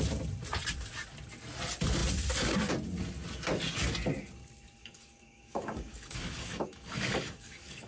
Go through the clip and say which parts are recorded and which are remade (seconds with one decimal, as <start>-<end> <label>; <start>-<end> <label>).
0.0-4.8 recorded; 4.8-7.9 remade